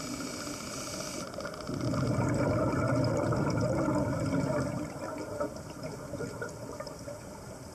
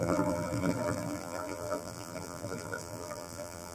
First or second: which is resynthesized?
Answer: second